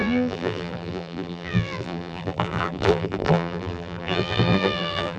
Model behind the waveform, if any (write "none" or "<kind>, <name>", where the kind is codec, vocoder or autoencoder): vocoder, BigVGAN v2